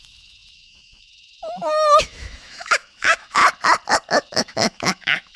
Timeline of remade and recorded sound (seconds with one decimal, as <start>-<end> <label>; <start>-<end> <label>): 0.0-3.4 remade; 3.4-4.1 recorded; 4.1-5.4 remade